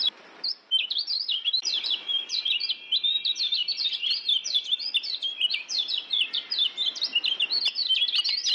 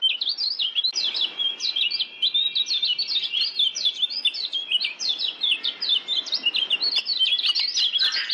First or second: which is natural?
second